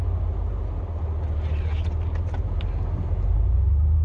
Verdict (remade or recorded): recorded